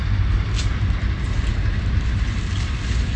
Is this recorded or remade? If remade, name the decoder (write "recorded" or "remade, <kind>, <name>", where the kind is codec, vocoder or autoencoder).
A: recorded